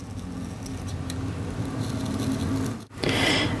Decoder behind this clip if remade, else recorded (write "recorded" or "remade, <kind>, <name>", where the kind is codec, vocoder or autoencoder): recorded